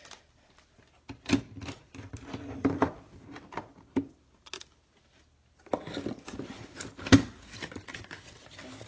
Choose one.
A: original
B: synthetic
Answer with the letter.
A